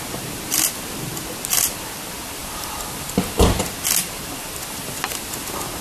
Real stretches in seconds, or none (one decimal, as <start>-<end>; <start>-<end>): 0.0-2.4; 3.6-5.8